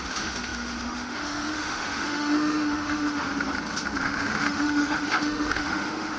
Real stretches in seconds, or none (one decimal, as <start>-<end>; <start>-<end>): 3.3-4.0